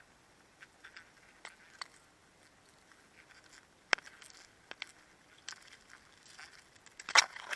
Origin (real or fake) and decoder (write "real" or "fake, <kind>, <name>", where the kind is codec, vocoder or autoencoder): real